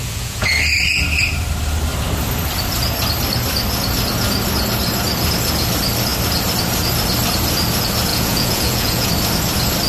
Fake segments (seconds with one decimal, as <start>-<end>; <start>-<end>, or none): 0.0-0.5; 8.1-9.1